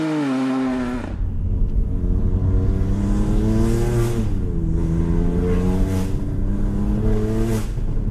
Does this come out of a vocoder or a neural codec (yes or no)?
no